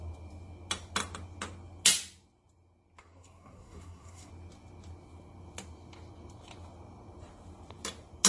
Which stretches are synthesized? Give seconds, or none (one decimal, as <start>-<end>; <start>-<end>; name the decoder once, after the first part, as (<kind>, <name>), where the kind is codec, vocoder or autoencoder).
3.0-4.3 (codec, SNAC)